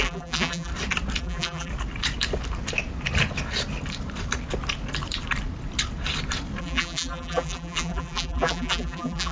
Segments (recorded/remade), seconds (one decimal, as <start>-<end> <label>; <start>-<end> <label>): 0.0-0.7 remade; 0.7-1.2 recorded; 1.2-1.7 remade; 1.7-6.6 recorded; 6.6-9.3 remade